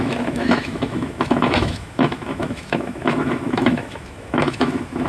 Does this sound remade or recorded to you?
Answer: remade